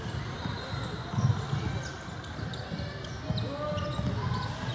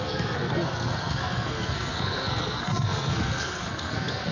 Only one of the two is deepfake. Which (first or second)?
second